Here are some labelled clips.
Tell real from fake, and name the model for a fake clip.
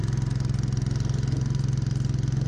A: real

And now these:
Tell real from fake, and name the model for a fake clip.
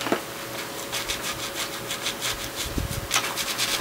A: real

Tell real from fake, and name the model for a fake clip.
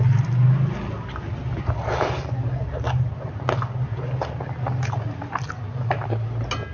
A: real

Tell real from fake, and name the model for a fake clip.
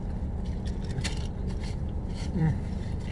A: fake, vocoder, BigVGAN v2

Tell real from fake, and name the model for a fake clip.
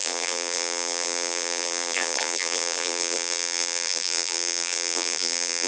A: fake, vocoder, BigVGAN v2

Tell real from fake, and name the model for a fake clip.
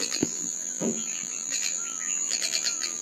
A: fake, vocoder, BigVGAN v2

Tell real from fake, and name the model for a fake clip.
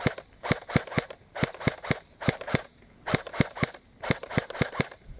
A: fake, vocoder, BigVGAN v2